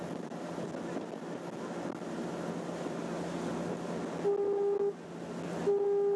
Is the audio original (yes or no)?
yes